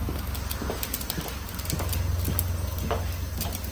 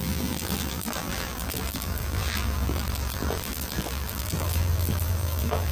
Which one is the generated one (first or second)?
second